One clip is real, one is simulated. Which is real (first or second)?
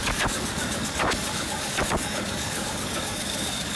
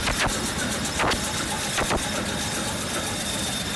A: second